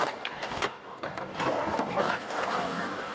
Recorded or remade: remade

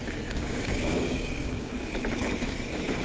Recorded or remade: remade